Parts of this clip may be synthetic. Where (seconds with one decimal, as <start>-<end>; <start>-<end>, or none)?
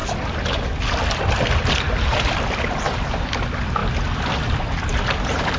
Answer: none